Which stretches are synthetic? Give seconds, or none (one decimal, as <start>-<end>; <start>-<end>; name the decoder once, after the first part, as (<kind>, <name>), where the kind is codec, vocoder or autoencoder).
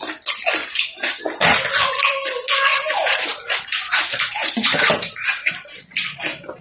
0.6-1.2 (vocoder, BigVGAN v2); 2.7-5.9